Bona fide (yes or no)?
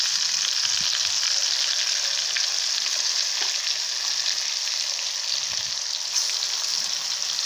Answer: yes